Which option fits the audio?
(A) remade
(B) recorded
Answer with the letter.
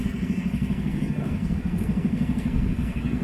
A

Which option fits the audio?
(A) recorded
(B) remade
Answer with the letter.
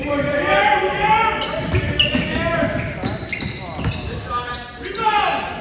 A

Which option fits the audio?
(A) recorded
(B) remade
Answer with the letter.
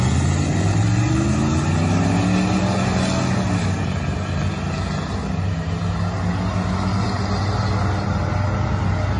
A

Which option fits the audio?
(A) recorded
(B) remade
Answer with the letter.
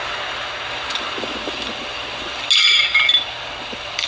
A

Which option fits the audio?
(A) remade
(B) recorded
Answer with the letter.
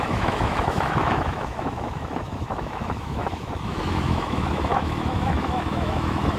A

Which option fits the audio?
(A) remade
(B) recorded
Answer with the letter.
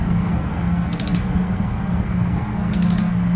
A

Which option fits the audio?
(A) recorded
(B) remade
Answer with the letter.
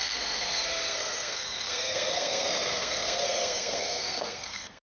B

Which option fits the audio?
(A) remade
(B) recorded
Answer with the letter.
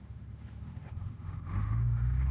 A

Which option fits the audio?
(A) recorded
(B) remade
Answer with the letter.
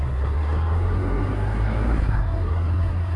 B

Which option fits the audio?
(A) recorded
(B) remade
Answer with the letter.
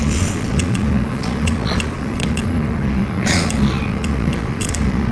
B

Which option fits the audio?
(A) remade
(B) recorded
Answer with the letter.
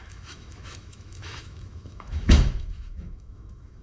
A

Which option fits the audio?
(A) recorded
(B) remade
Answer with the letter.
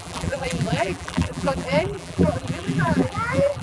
B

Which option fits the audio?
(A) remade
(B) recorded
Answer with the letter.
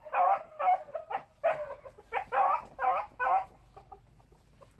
B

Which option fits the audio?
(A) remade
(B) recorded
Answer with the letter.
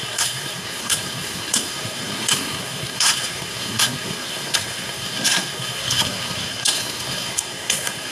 A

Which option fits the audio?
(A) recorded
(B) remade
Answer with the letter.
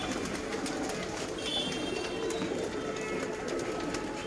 A